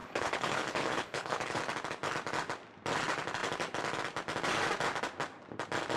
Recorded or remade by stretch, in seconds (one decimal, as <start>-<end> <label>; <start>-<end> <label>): 0.0-1.6 remade; 1.6-6.0 recorded